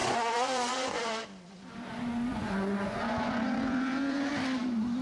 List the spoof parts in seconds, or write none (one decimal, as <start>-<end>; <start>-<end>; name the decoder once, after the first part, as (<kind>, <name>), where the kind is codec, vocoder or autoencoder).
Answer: 0.0-1.2 (vocoder, Vocos); 2.3-4.3